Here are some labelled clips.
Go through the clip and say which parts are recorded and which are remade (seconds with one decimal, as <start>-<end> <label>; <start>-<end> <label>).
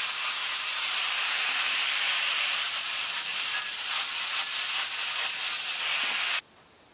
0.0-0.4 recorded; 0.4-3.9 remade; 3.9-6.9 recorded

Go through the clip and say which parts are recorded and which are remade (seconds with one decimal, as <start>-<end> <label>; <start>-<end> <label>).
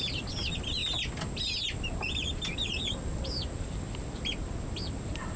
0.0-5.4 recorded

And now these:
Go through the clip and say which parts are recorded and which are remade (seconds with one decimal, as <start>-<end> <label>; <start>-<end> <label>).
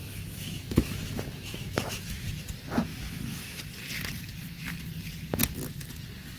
0.0-2.3 remade; 2.3-2.9 recorded; 2.9-3.6 remade; 3.6-6.4 recorded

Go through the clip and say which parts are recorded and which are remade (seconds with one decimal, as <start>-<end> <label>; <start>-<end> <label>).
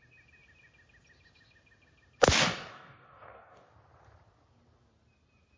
0.0-2.5 recorded; 2.5-3.7 remade; 3.7-5.6 recorded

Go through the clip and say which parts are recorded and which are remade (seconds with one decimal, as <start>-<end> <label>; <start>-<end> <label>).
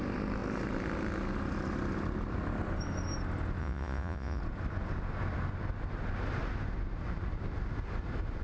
0.0-3.6 recorded; 3.6-4.4 remade; 4.4-8.4 recorded